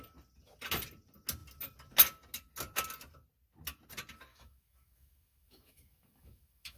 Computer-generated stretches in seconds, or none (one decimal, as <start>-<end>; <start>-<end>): 4.3-6.8